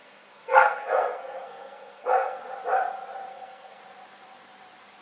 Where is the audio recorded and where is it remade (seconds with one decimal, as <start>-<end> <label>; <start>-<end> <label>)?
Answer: 0.0-2.4 remade; 2.4-3.3 recorded; 3.3-3.8 remade; 3.8-5.0 recorded